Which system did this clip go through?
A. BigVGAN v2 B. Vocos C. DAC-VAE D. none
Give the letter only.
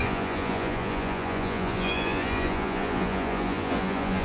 B